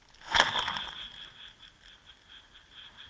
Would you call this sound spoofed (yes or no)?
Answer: no